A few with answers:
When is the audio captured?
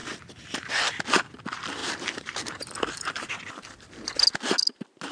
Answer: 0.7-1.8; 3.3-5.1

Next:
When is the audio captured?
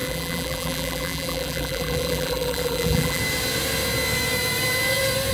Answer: 3.2-5.3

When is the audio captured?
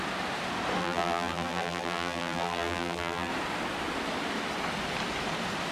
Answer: 0.0-0.8; 3.3-5.7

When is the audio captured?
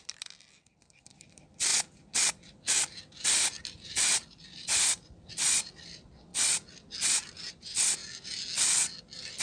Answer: 6.3-7.5; 8.0-9.0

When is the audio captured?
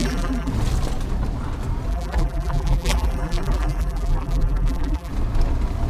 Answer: 0.5-1.9; 5.1-5.9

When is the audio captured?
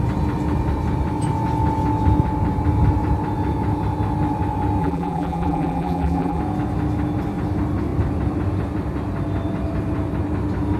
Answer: 0.0-4.8; 6.4-10.8